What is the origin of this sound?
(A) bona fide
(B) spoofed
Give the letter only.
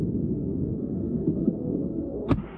B